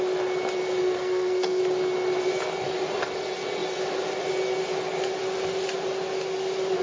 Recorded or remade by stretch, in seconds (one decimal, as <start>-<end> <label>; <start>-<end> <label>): 0.0-0.8 recorded; 0.8-1.6 remade; 1.6-6.8 recorded